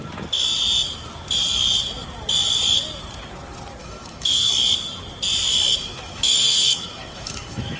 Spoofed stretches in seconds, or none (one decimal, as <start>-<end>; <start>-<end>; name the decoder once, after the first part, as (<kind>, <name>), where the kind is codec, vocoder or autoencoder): 3.8-4.5 (autoencoder, DAC-VAE); 5.7-7.8